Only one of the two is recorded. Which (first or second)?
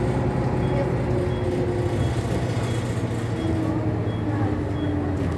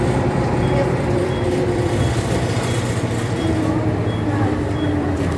first